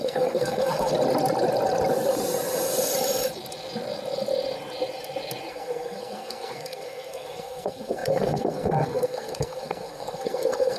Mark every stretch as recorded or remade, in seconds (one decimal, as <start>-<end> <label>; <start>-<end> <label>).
0.0-0.9 remade; 0.9-5.5 recorded; 5.5-10.8 remade